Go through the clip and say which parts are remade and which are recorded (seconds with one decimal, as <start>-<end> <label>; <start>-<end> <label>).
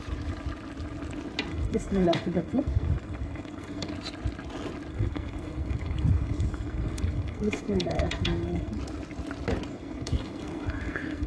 0.0-1.5 recorded; 1.5-3.9 remade; 3.9-4.9 recorded; 4.9-8.8 remade; 8.8-9.7 recorded; 9.7-11.3 remade